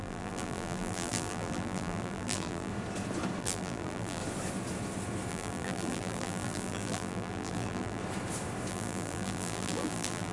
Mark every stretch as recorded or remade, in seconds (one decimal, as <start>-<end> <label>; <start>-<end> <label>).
0.0-2.7 remade; 2.7-3.4 recorded; 3.4-4.2 remade; 4.2-5.3 recorded; 5.3-8.0 remade; 8.0-8.7 recorded; 8.7-10.3 remade